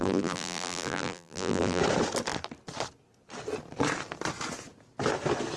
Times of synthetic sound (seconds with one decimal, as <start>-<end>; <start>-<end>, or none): 0.0-1.8